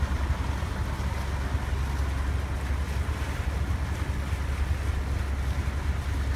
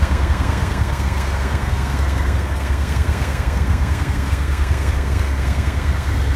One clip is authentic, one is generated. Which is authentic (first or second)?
first